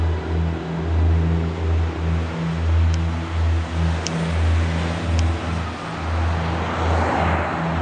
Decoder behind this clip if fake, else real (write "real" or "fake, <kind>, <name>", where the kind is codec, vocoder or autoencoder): real